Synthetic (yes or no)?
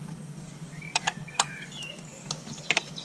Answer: yes